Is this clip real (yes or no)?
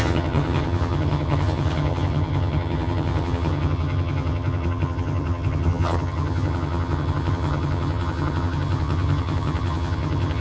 no